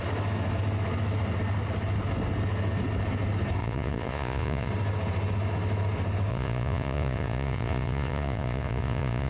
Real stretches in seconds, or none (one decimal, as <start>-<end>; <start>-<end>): 0.0-3.6; 4.7-6.3